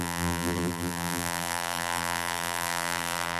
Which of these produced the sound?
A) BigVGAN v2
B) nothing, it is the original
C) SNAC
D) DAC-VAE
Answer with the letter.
A